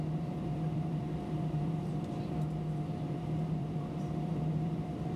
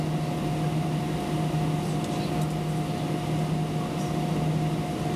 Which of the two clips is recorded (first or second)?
second